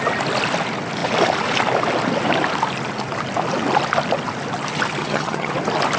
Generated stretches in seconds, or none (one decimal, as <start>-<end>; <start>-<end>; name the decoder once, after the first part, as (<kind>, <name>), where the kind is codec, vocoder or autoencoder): 5.0-5.5 (vocoder, HiFi-GAN)